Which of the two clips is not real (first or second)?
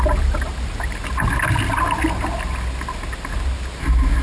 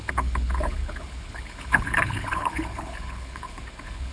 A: second